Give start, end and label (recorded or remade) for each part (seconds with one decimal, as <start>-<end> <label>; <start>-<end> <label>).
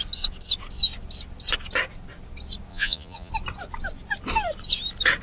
0.0-2.7 recorded; 2.7-3.3 remade; 3.3-5.2 recorded